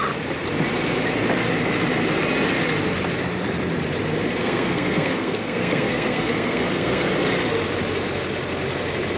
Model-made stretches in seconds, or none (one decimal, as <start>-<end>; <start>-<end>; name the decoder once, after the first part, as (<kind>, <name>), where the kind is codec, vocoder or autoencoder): 4.4-7.1 (codec, SNAC)